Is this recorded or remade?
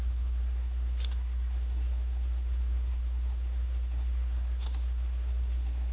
remade